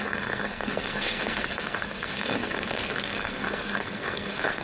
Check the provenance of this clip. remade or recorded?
remade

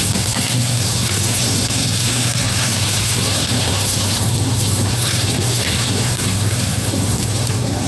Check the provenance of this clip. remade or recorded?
remade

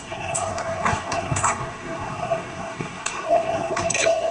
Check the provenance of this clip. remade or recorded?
remade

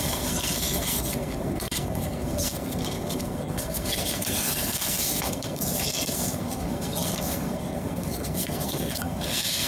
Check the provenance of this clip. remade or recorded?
remade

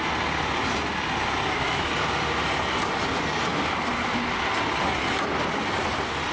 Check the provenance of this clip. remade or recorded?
recorded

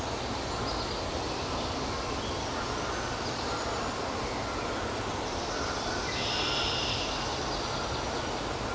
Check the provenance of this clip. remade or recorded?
recorded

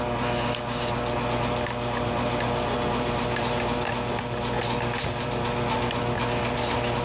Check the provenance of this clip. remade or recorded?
recorded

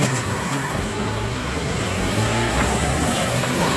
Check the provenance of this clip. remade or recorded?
remade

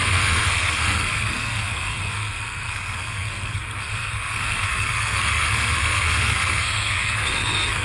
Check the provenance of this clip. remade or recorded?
remade